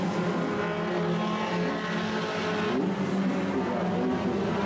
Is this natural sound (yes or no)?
yes